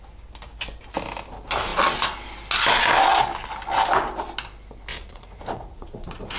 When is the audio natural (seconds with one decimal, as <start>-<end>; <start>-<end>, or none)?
0.0-4.9